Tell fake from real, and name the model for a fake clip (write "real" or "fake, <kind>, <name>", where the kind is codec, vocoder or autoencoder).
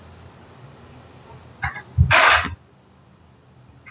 real